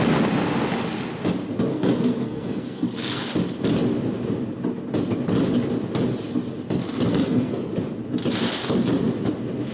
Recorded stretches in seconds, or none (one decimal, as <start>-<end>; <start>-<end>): 0.0-1.7; 3.3-7.1; 7.7-9.7